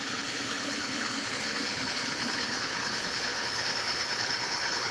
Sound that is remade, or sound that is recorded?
remade